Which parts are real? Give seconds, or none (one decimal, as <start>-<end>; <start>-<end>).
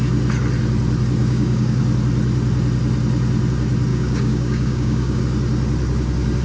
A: 0.0-1.2; 1.8-3.9; 5.2-6.4